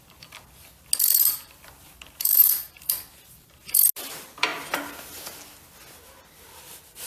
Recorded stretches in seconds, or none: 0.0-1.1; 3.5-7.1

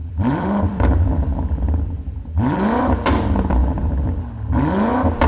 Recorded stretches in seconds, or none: 3.2-3.6; 4.2-5.3

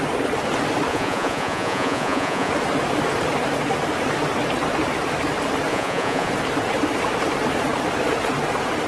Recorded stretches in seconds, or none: 0.0-0.9; 2.5-5.7; 6.3-8.9

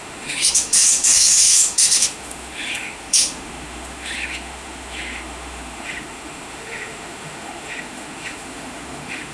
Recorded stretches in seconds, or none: none